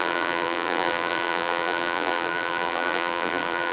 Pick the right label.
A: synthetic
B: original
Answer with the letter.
A